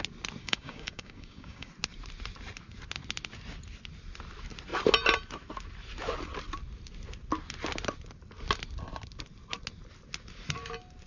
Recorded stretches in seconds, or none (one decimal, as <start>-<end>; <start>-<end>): 0.0-0.4; 1.7-11.1